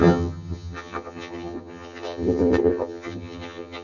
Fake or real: fake